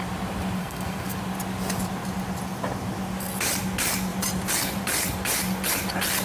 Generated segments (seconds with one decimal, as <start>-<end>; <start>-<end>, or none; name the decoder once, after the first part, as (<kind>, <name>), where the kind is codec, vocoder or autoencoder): 0.6-1.2 (codec, SNAC)